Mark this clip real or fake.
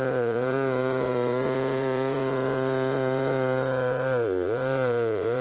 fake